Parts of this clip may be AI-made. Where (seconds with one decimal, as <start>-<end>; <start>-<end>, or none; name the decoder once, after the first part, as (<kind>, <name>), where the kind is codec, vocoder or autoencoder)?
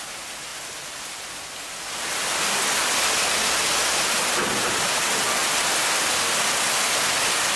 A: none